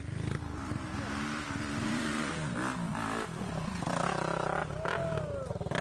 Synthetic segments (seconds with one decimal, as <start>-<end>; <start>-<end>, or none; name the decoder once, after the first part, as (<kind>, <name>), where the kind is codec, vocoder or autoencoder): 1.8-2.3 (vocoder, Vocos)

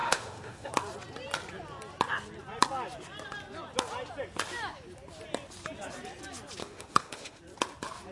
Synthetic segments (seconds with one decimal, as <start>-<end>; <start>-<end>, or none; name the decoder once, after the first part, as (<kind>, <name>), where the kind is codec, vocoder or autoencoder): 0.0-0.7 (autoencoder, DAC-VAE); 6.6-7.4

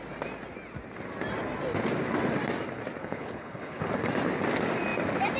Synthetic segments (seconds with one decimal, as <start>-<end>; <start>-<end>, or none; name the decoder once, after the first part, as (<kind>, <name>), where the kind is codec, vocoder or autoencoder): 3.0-3.9 (codec, HILCodec)